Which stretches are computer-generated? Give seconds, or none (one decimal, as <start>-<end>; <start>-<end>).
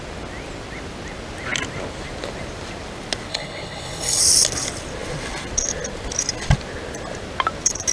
3.3-4.2